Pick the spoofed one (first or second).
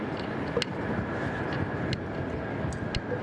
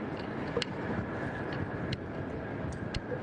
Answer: second